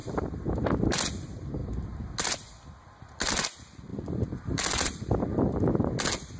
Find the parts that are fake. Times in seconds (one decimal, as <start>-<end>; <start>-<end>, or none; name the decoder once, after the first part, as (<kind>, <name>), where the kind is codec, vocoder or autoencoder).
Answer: 0.0-0.9 (vocoder, BigVGAN v2); 3.9-5.0